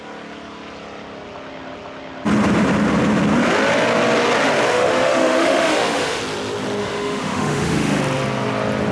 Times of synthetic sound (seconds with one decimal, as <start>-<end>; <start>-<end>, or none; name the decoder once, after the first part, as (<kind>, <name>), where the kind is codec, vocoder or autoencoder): 4.7-6.2 (autoencoder, DAC-VAE); 6.8-8.0